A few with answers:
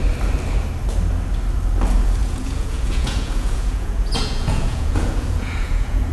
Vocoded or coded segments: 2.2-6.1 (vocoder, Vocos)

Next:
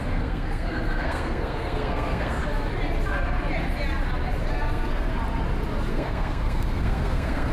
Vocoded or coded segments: 0.0-2.4 (codec, SNAC); 4.4-5.1; 5.9-7.5

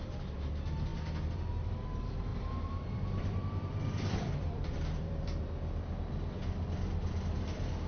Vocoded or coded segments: 0.9-1.7 (vocoder, BigVGAN v2); 2.3-5.4

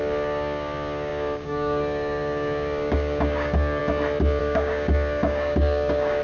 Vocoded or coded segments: 0.0-3.8 (codec, DAC); 4.4-6.2

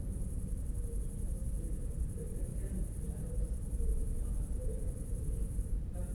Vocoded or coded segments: 0.0-2.5 (vocoder, BigVGAN v2); 3.1-6.1